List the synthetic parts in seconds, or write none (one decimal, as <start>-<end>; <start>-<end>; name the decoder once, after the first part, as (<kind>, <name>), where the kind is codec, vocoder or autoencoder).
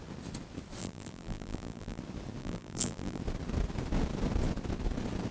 0.8-2.0 (vocoder, BigVGAN v2); 2.4-3.2